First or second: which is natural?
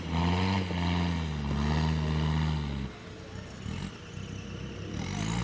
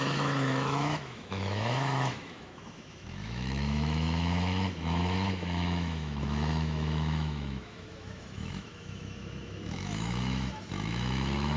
first